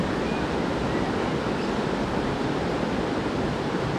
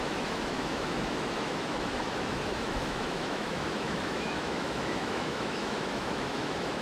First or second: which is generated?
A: second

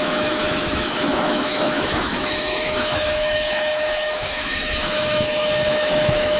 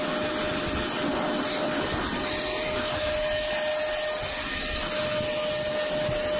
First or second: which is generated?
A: first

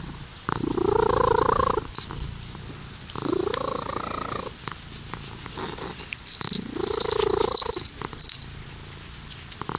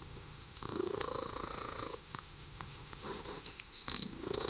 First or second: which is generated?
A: second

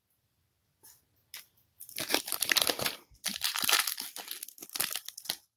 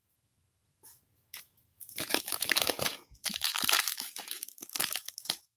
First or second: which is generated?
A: second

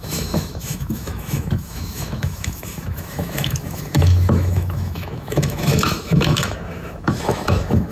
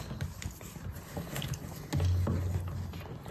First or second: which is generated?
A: first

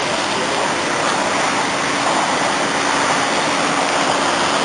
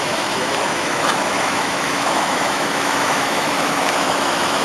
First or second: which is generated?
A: second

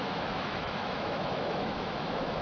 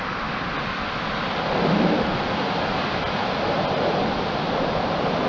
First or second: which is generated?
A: first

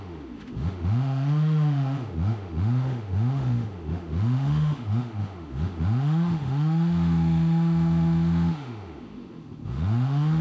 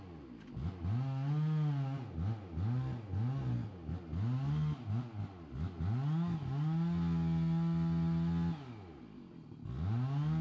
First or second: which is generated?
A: first